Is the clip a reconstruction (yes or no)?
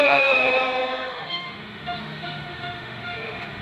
yes